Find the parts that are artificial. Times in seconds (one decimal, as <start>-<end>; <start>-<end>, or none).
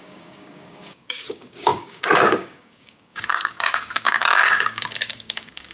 0.0-5.7